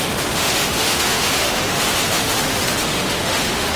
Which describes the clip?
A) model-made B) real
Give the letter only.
A